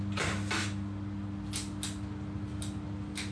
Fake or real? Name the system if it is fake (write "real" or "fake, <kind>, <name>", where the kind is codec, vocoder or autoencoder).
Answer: real